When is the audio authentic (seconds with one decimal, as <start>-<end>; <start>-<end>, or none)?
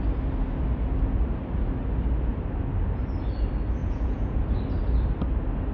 0.0-3.8; 4.4-5.7